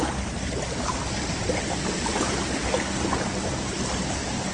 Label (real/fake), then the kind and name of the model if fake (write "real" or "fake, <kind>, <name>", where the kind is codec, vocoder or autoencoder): real